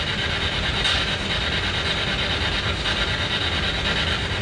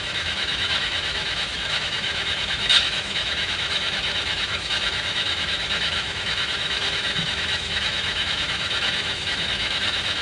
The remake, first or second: second